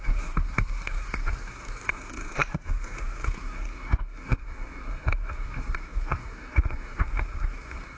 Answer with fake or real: fake